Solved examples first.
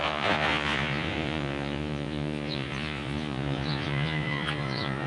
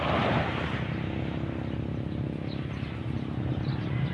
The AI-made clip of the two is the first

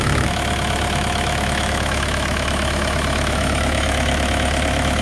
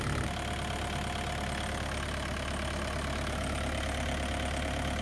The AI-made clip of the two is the first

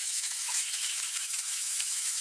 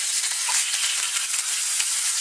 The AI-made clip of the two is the first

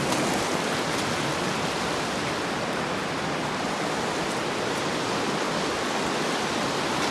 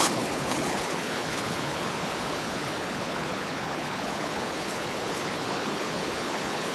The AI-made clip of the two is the second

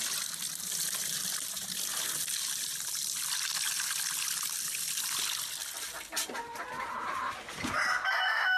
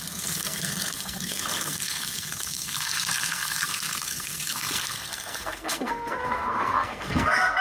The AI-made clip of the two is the second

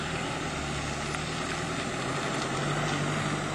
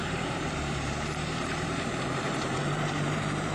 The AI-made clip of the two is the second